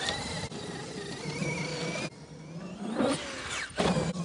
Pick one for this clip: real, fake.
real